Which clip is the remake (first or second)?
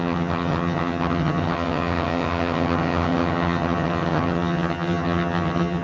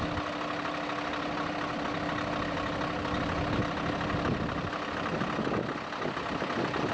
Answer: first